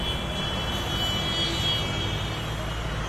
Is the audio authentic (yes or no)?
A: yes